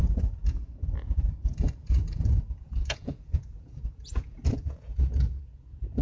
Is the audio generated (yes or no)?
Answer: yes